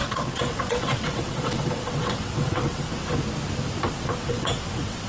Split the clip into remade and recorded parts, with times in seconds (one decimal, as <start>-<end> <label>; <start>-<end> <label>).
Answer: 0.0-3.0 remade; 3.0-3.9 recorded; 3.9-5.1 remade